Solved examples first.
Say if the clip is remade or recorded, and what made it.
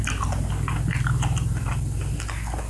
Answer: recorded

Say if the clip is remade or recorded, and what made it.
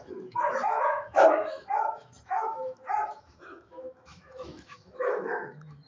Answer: remade, autoencoder, DAC-VAE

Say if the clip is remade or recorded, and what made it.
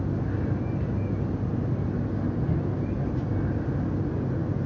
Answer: recorded